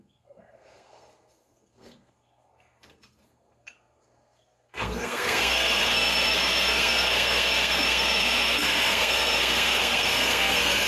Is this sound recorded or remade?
remade